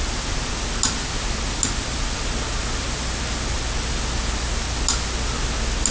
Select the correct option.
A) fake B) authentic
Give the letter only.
B